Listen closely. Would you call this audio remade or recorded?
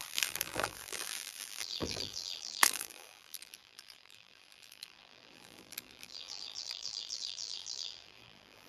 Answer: remade